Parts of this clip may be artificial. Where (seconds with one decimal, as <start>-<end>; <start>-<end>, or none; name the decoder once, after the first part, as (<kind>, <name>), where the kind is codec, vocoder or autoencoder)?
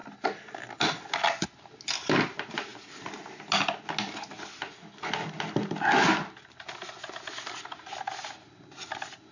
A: none